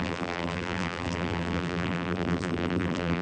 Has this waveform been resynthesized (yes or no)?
yes